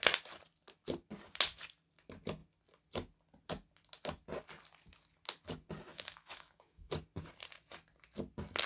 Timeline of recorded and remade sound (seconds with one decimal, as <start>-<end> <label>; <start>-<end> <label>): 0.0-5.9 recorded; 5.9-6.9 remade; 6.9-8.7 recorded